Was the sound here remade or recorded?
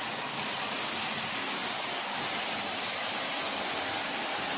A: recorded